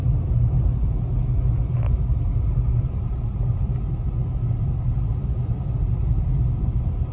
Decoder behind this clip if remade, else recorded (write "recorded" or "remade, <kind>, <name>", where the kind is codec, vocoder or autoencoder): recorded